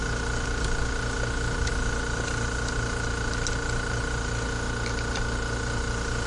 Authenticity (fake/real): real